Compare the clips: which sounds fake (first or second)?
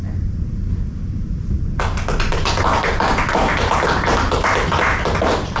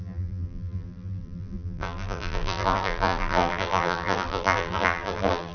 second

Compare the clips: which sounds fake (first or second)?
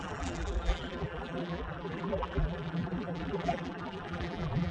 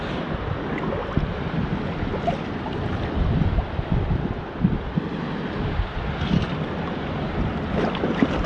first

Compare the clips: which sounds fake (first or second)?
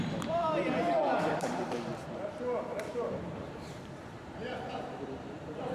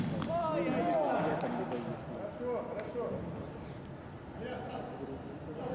first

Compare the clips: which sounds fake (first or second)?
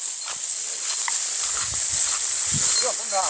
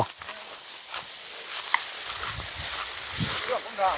second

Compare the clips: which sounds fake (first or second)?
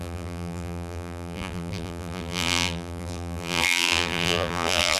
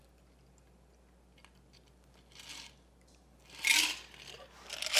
first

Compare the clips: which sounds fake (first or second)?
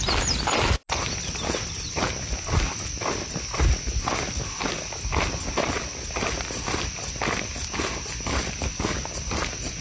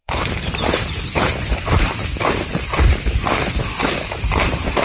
second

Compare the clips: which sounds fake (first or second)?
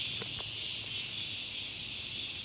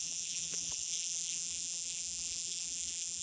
second